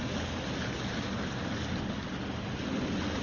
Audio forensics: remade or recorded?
recorded